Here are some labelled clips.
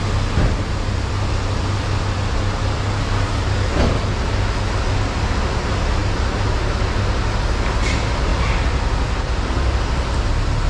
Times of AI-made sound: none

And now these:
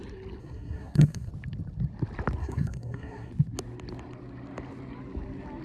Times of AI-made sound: 0.4-1.3 (codec, SNAC); 2.4-3.3